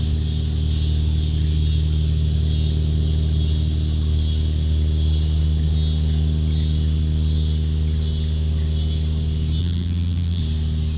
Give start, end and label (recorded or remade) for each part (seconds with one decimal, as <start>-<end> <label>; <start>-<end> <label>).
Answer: 0.0-9.6 recorded; 9.6-10.4 remade; 10.4-11.0 recorded